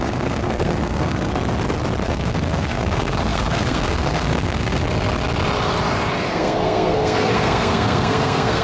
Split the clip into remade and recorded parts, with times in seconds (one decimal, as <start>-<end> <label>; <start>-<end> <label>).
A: 0.0-1.3 remade; 1.3-2.1 recorded; 2.1-4.8 remade; 4.8-6.3 recorded; 6.3-8.6 remade